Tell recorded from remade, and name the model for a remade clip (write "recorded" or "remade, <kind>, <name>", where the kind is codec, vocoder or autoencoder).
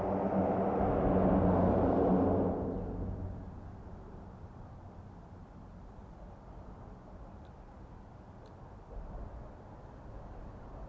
recorded